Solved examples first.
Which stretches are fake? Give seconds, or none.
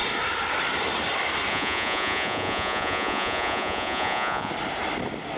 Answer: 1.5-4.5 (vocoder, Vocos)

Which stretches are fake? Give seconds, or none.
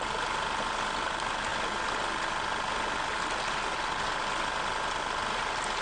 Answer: none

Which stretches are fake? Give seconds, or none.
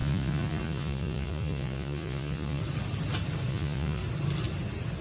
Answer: 0.0-2.6 (vocoder, Vocos); 3.5-4.0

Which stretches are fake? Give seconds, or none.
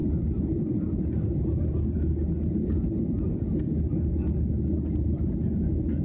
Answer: none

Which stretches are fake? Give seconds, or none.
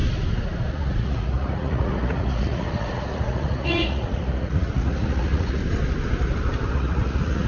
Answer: 0.7-5.6 (vocoder, Vocos); 6.7-7.5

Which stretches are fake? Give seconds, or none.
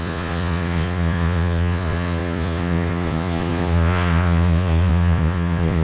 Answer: 0.0-5.8 (vocoder, Vocos)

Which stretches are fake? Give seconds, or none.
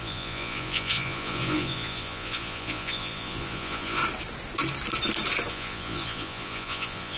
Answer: 0.0-4.0 (vocoder, Vocos); 5.5-7.2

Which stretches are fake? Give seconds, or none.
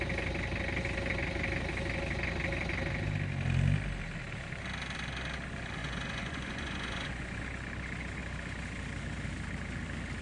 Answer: 5.8-7.4 (vocoder, Vocos)